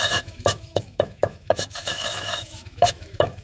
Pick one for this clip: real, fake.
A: fake